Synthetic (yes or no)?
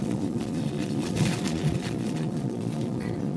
yes